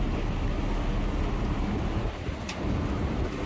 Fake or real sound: real